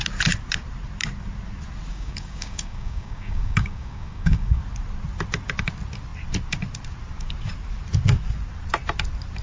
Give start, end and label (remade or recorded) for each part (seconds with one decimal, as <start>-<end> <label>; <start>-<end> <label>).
0.0-1.9 recorded; 1.9-4.6 remade; 4.6-9.4 recorded